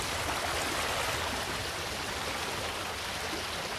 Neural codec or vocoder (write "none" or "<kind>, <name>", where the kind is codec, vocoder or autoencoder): none